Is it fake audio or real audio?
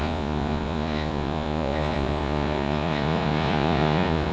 fake